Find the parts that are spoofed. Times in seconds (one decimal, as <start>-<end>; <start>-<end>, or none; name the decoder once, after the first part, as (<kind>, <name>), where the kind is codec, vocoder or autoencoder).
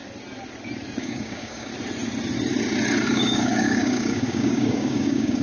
1.0-1.7 (codec, DAC); 3.1-5.4